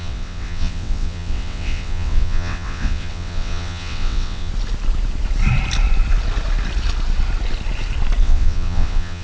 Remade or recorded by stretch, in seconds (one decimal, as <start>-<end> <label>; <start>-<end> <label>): 0.0-4.5 remade; 4.5-8.2 recorded; 8.2-9.2 remade